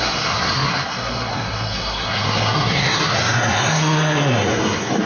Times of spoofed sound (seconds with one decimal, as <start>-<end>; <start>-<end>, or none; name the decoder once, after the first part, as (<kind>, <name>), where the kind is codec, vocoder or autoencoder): 0.0-5.1 (codec, SNAC)